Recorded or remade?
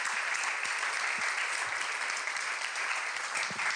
recorded